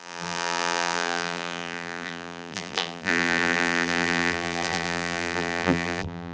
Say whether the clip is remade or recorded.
remade